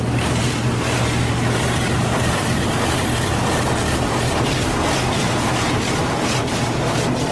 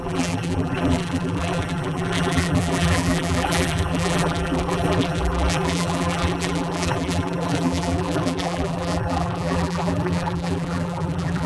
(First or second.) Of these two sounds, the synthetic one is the second